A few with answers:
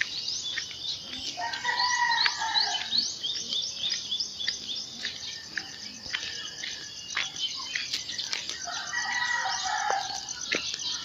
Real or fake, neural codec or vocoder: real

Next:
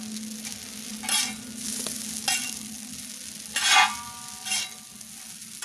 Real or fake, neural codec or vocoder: real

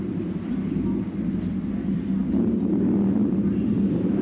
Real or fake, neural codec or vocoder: fake, vocoder, BigVGAN v2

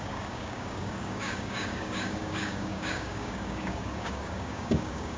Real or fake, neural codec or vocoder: fake, codec, DAC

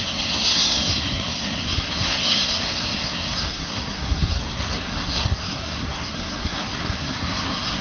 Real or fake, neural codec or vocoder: fake, codec, SNAC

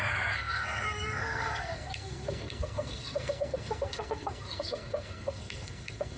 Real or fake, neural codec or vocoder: fake, codec, SNAC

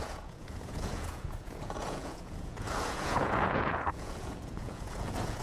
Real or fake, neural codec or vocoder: fake, vocoder, Vocos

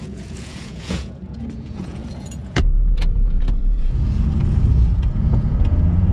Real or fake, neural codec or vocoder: fake, vocoder, Vocos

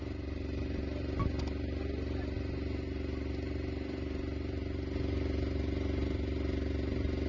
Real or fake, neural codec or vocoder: real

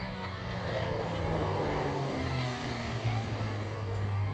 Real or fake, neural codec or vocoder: fake, codec, DAC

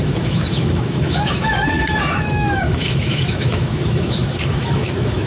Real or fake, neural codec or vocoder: fake, autoencoder, DAC-VAE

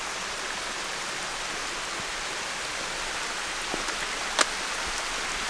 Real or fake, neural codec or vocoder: real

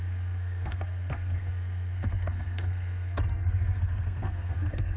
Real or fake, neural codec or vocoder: fake, codec, SNAC